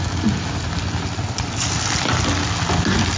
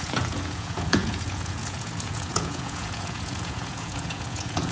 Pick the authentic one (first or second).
first